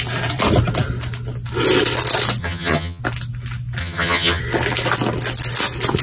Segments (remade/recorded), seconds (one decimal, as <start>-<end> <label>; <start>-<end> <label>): 0.0-2.4 recorded; 2.4-3.0 remade; 3.0-3.8 recorded; 3.8-4.4 remade; 4.4-6.0 recorded